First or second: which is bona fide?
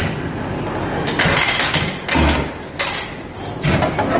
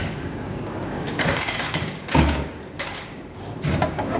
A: first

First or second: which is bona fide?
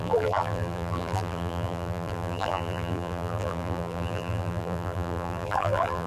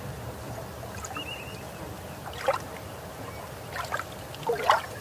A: second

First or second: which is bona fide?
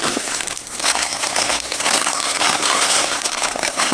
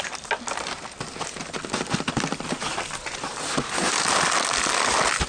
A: second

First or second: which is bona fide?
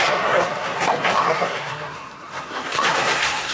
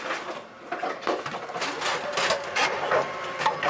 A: second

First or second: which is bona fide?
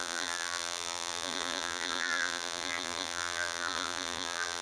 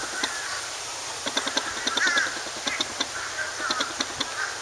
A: second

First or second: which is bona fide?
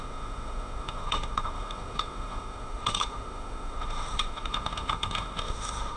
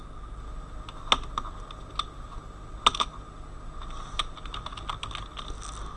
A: second